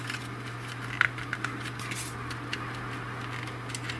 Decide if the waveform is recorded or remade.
recorded